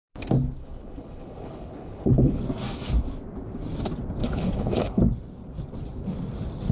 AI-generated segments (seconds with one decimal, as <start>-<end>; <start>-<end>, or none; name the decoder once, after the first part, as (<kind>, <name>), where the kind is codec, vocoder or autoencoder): 0.6-2.4 (codec, HILCodec); 4.2-5.0